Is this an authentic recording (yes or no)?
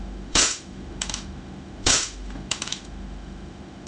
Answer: no